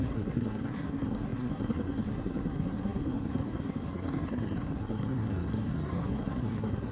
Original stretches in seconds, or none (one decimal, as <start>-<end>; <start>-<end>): none

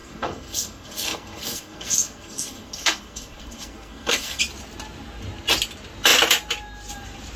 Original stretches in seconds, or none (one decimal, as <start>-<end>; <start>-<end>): 4.4-7.4

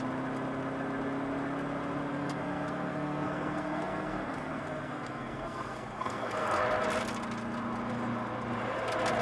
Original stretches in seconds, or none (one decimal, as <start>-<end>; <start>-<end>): 0.0-2.1; 6.6-9.2